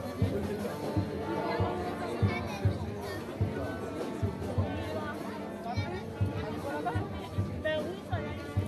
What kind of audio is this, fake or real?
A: real